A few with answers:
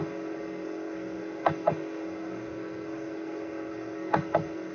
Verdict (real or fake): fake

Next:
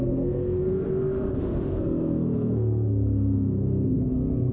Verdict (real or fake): fake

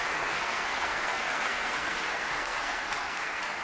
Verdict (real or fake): fake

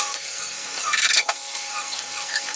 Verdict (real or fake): fake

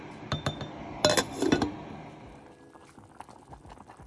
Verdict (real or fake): real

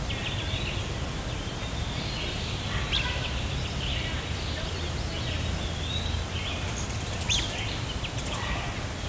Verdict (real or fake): real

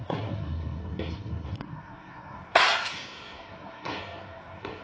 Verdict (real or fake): fake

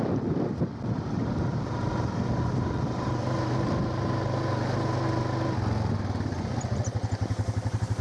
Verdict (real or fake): real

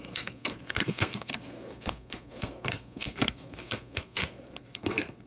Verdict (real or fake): fake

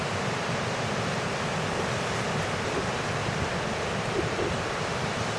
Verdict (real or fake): real